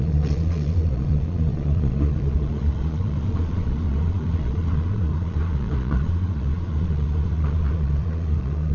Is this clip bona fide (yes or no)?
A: no